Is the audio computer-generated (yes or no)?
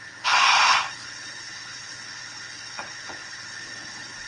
yes